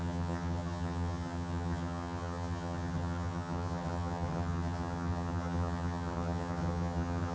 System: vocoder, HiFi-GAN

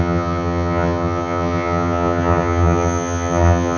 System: vocoder, HiFi-GAN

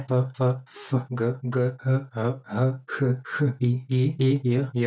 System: none